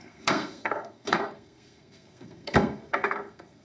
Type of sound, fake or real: fake